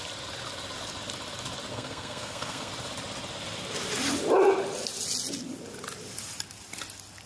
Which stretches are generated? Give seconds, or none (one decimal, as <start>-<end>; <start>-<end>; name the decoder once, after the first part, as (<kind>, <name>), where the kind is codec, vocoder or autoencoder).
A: 1.7-2.7 (codec, SNAC)